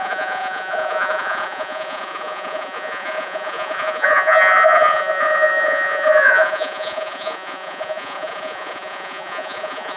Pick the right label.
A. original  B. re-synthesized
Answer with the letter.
B